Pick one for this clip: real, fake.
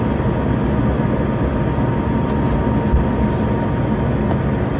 real